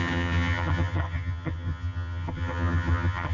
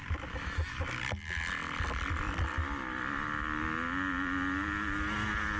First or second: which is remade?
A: first